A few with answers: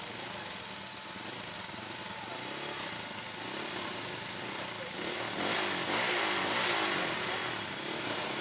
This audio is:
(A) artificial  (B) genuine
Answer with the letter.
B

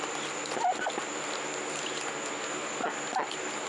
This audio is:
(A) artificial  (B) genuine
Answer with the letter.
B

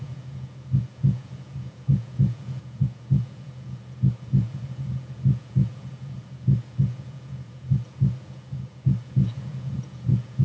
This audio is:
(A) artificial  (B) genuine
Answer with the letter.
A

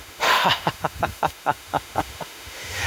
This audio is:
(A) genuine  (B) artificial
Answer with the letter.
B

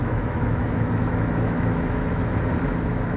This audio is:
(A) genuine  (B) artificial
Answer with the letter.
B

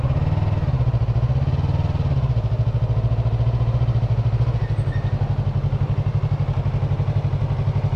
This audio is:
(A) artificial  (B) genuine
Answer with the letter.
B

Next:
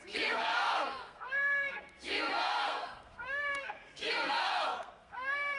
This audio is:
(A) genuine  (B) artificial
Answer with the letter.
B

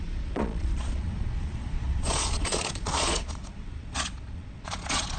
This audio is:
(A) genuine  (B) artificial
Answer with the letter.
B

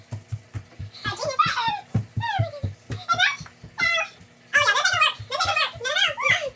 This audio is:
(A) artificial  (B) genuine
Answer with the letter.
B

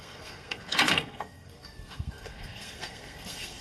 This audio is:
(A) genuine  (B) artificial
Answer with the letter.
B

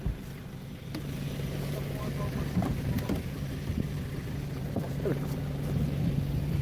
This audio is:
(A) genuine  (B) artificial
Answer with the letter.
B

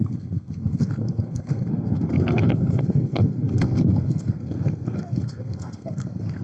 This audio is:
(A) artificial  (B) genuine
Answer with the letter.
A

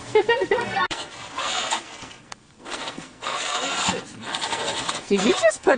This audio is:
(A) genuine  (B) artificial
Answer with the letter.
B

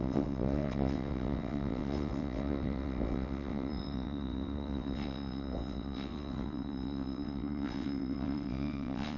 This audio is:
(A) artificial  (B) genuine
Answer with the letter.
A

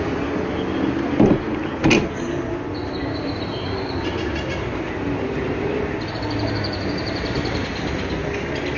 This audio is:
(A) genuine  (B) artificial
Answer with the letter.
A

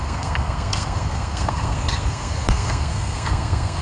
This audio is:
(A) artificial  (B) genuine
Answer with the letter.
A